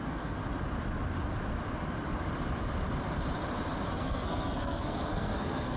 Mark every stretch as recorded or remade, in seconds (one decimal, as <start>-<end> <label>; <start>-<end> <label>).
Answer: 0.0-0.4 remade; 0.4-3.9 recorded; 3.9-5.8 remade